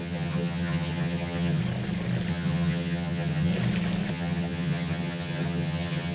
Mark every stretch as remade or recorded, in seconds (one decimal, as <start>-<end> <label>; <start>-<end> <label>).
0.0-1.6 remade; 1.6-2.3 recorded; 2.3-3.5 remade; 3.5-4.1 recorded; 4.1-6.1 remade